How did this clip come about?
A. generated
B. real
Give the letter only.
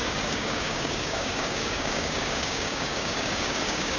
A